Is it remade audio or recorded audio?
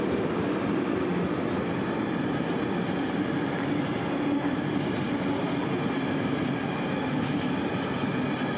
recorded